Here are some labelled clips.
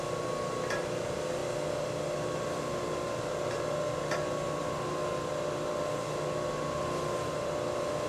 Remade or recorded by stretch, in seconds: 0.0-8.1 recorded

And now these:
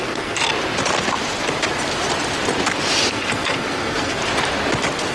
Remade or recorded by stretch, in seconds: 0.0-0.4 remade; 0.4-3.1 recorded; 3.1-4.2 remade; 4.2-5.1 recorded

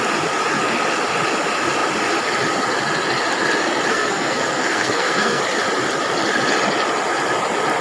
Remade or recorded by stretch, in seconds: 0.0-3.9 recorded; 3.9-5.4 remade; 5.4-7.8 recorded

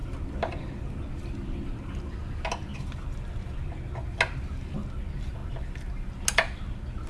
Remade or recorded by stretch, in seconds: 0.0-7.1 recorded

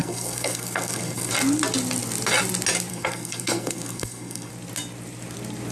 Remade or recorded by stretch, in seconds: 0.0-1.3 remade; 1.3-2.9 recorded; 2.9-4.5 remade; 4.5-5.7 recorded

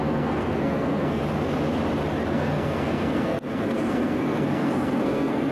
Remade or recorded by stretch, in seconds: 0.0-1.2 remade; 1.2-2.3 recorded; 2.3-5.5 remade

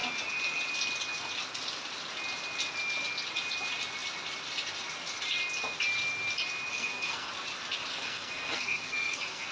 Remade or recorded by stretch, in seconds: 0.0-6.7 recorded; 6.7-7.3 remade; 7.3-7.9 recorded; 7.9-9.5 remade

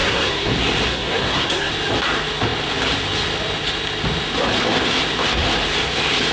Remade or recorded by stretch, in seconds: 0.0-0.5 remade; 0.5-0.9 recorded; 0.9-1.7 remade; 1.7-6.3 recorded